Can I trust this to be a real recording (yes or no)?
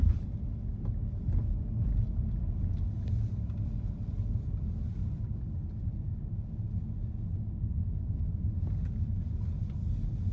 yes